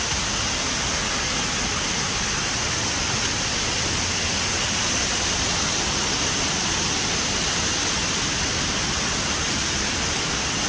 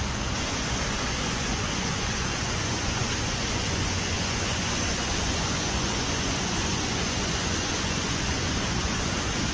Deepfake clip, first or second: second